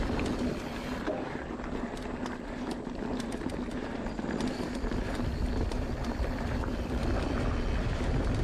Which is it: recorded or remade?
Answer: recorded